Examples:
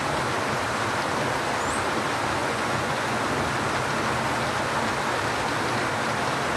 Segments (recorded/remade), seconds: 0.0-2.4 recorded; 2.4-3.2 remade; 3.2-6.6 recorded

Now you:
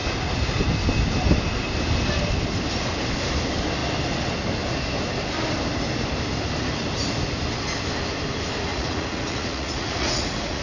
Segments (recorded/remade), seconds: 0.0-8.7 recorded; 8.7-10.6 remade

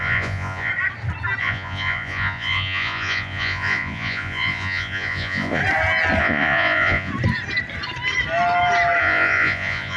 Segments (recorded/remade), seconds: 0.0-0.7 remade; 0.7-1.4 recorded; 1.4-5.6 remade; 5.6-6.2 recorded; 6.2-7.1 remade; 7.1-9.0 recorded; 9.0-10.0 remade